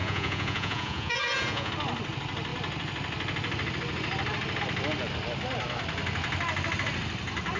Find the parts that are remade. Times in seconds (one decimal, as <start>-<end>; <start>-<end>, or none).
0.0-1.7